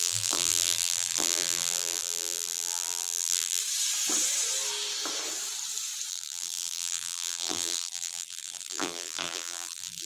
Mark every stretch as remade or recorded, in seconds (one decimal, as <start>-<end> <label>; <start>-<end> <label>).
0.0-3.6 remade; 3.6-6.1 recorded; 6.1-10.1 remade